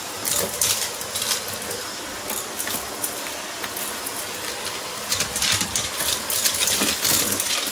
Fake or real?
real